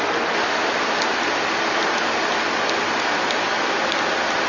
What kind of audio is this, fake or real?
real